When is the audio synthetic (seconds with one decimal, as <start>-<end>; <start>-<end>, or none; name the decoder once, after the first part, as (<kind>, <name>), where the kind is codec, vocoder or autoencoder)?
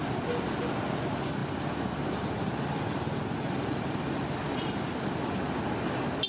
none